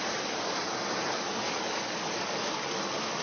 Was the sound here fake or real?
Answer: real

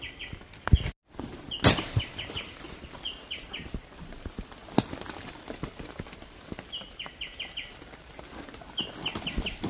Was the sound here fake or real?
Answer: real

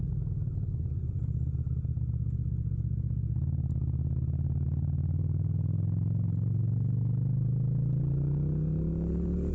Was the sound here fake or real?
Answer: real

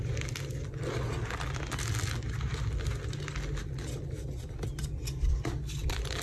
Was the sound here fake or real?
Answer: real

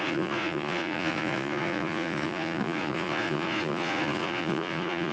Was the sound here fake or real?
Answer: fake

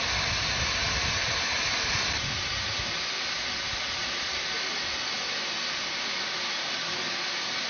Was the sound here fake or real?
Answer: real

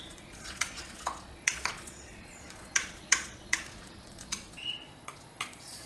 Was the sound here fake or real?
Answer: fake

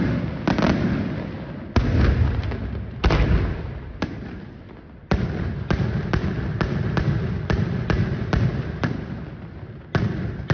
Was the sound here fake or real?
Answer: real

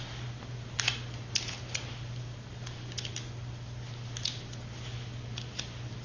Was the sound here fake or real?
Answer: real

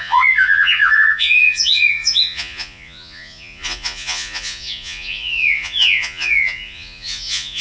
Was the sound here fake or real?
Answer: fake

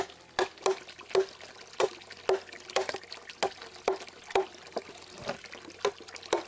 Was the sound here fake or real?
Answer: real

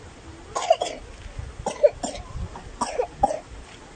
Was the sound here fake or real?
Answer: real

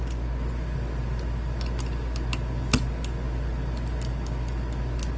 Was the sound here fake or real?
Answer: real